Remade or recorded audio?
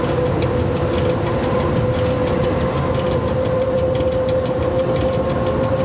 recorded